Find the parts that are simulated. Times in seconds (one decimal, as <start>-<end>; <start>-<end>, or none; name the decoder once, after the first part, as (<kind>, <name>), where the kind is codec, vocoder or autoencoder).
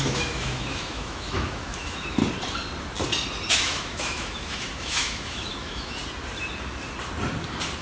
0.0-2.2 (autoencoder, DAC-VAE); 3.5-6.0